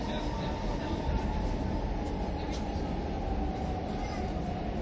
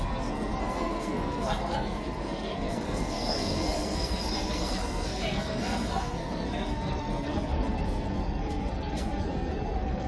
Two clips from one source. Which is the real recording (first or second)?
first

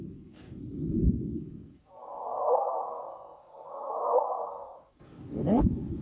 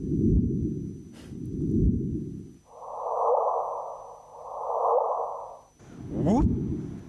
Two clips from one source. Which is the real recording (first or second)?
second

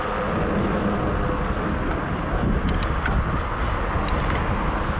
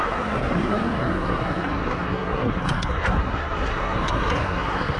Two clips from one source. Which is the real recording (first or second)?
first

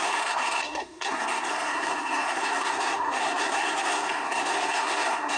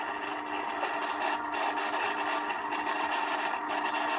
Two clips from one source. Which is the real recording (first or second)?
second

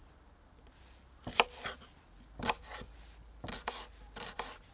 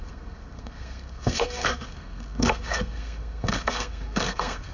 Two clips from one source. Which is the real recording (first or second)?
first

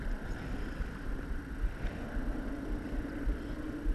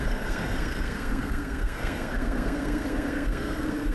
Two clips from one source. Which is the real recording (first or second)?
first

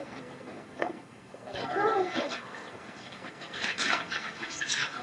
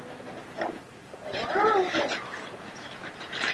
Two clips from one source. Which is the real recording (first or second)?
second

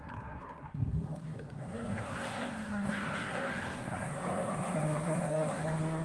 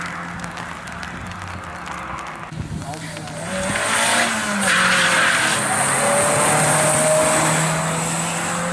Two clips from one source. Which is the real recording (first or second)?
second